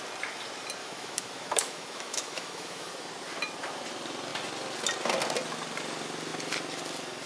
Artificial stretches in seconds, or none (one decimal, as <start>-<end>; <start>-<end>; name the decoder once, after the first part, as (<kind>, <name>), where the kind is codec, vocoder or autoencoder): 0.8-2.9 (autoencoder, DAC-VAE)